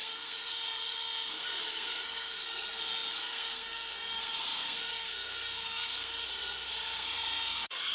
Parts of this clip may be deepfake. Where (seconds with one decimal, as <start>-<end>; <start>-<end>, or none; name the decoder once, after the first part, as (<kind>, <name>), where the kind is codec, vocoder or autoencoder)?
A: 0.0-7.9 (codec, SNAC)